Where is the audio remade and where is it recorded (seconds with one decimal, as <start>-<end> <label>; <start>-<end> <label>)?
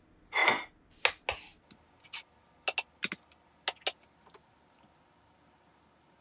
0.0-6.2 recorded